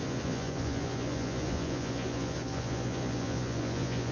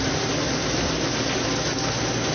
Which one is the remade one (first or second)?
first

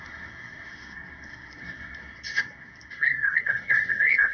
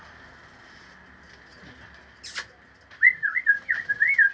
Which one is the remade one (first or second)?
first